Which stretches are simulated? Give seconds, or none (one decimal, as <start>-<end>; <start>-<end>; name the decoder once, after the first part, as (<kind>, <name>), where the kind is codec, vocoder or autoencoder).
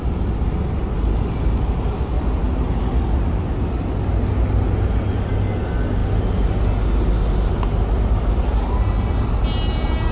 none